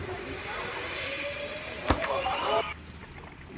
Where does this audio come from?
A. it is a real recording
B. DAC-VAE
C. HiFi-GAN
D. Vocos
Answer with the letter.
A